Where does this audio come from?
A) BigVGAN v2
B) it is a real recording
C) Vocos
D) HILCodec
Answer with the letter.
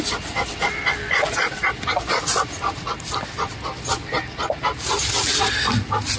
B